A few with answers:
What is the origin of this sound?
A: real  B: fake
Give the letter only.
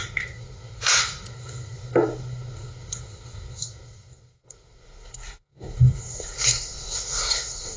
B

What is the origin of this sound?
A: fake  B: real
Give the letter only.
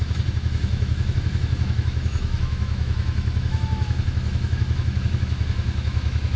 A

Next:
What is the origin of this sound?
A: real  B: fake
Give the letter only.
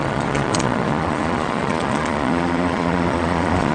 B